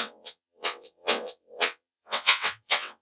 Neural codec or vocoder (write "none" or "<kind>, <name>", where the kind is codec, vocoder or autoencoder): vocoder, WaveNeXt